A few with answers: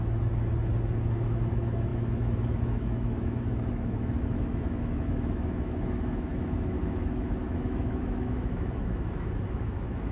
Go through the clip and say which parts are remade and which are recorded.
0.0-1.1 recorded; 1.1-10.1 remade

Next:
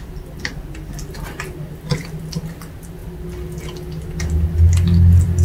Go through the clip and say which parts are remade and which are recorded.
0.0-5.4 recorded

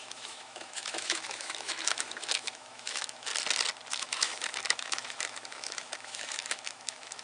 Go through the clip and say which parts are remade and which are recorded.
0.0-3.3 remade; 3.3-3.9 recorded; 3.9-7.2 remade